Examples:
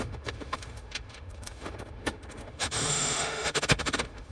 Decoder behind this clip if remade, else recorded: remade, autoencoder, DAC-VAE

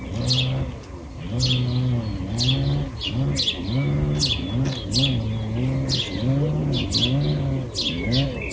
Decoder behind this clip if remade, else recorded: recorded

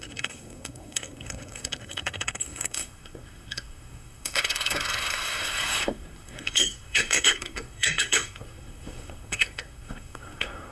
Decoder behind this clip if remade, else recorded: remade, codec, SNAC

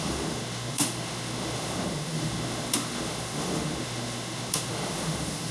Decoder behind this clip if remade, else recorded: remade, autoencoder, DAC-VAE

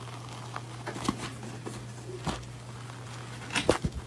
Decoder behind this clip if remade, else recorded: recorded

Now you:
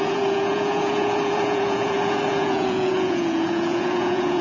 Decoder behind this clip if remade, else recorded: remade, vocoder, Vocos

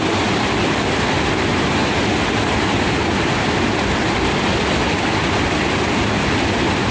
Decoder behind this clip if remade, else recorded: recorded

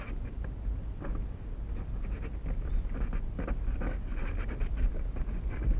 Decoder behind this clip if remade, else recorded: recorded